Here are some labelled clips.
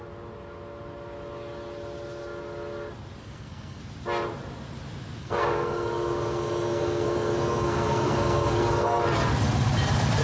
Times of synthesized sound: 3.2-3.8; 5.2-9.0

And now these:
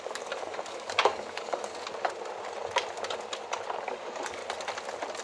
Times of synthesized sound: 0.0-1.7; 3.8-4.4

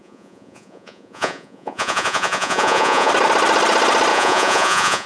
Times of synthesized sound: 0.0-3.1; 4.1-5.1

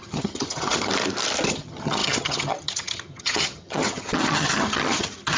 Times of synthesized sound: 0.0-0.9; 1.5-5.4

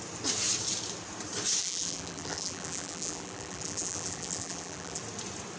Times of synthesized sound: 1.6-5.0

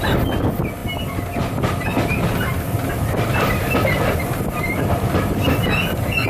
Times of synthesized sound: none